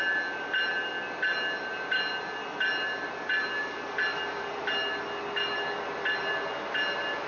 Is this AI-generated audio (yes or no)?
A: no